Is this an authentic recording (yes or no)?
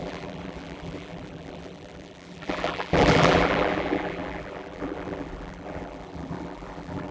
no